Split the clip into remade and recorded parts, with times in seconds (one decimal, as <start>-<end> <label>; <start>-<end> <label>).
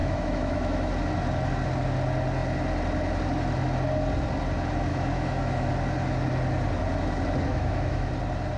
0.0-0.9 remade; 0.9-4.9 recorded; 4.9-5.7 remade; 5.7-7.5 recorded; 7.5-8.1 remade; 8.1-8.6 recorded